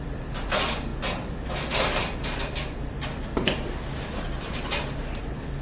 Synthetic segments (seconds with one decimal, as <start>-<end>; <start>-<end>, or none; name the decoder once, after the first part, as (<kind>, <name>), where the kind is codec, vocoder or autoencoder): 0.0-0.9 (vocoder, BigVGAN v2); 2.0-5.6